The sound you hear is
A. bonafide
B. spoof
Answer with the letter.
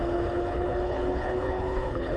B